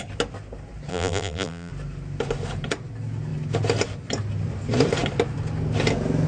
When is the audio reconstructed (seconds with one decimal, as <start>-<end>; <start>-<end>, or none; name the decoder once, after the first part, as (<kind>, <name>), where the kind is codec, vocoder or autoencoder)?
0.9-1.7 (vocoder, BigVGAN v2)